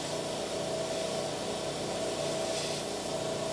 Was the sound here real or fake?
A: real